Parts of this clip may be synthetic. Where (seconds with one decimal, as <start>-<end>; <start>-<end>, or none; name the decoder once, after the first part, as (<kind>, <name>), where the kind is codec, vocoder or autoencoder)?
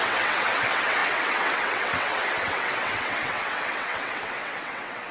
0.0-5.1 (vocoder, WaveNeXt)